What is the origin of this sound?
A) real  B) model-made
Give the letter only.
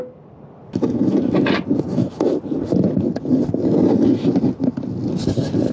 A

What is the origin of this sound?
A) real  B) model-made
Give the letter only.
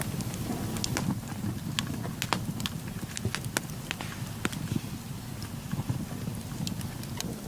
A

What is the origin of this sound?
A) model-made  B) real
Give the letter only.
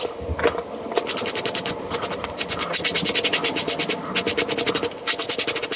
B